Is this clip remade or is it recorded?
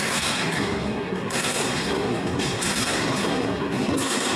remade